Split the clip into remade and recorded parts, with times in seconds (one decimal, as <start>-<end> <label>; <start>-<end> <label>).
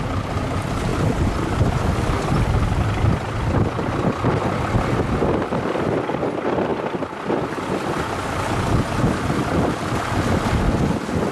0.0-11.3 recorded